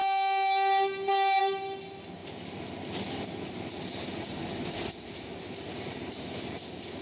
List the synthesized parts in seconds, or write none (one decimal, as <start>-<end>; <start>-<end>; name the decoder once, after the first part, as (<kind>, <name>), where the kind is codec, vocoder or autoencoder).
none